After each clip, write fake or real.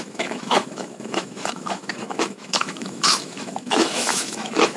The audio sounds fake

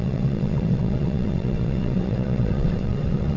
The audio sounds fake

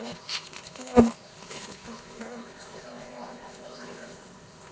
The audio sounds fake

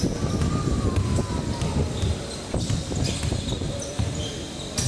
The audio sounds real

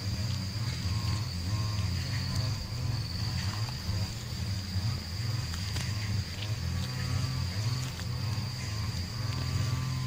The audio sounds real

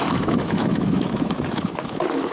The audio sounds fake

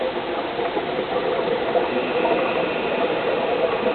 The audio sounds real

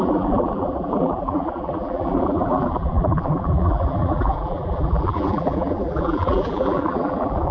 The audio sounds fake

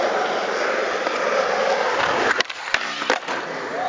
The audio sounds real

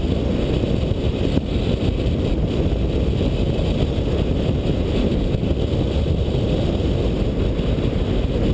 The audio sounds real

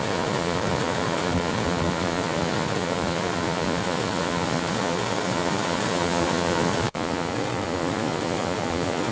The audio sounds fake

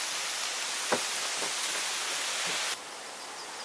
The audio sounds real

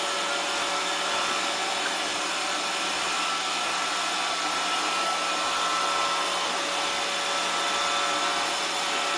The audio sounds real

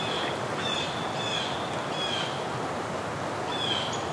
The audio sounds real